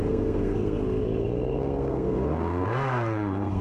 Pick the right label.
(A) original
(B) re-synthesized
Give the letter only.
B